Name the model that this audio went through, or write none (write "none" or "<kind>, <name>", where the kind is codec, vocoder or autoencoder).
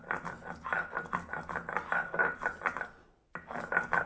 none